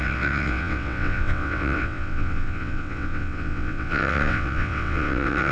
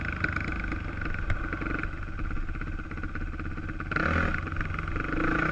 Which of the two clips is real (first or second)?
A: second